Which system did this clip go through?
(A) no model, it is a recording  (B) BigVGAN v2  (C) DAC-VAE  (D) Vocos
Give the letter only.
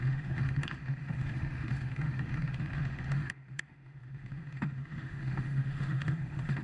C